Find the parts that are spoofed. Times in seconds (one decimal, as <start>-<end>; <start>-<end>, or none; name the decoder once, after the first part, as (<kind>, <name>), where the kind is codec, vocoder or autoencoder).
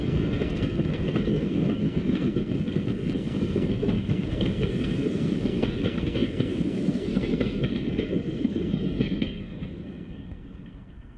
0.0-11.2 (codec, SNAC)